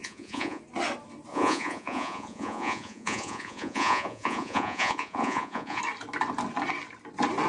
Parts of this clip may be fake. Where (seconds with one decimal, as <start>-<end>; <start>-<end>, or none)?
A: 0.0-0.6; 1.3-5.8